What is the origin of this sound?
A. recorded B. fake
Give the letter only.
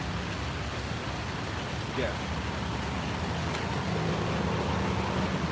A